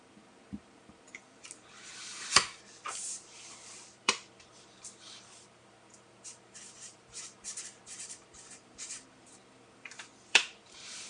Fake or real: fake